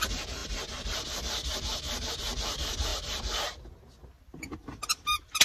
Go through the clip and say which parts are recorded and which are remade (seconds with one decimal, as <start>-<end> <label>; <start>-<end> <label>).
0.0-5.4 recorded